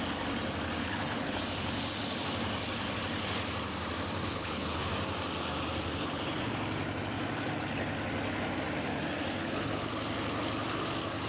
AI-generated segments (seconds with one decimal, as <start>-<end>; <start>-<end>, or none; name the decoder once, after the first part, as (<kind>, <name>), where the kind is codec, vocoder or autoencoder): 0.8-1.4 (codec, HILCodec); 4.2-4.9; 6.0-6.5; 9.4-9.9